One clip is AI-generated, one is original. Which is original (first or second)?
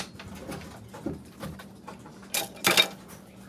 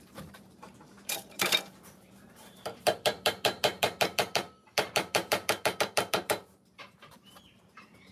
first